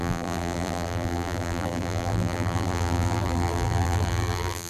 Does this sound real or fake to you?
fake